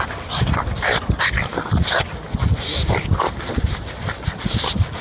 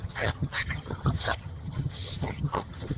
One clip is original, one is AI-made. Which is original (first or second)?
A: first